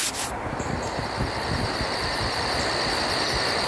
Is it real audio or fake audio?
fake